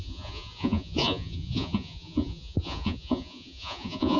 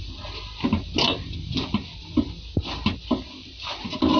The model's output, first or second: first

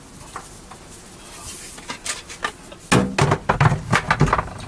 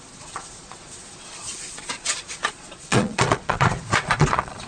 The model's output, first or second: second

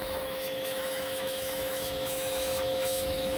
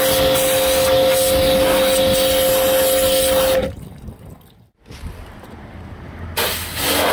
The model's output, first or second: first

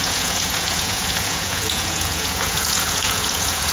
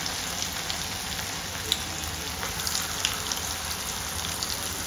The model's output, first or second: first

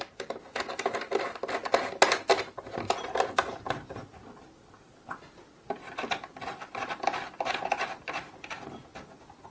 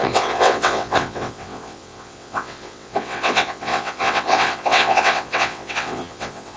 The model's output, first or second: second